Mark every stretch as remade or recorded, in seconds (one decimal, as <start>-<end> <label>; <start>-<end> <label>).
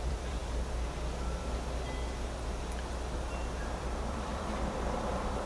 0.0-0.4 remade; 0.4-3.7 recorded; 3.7-5.5 remade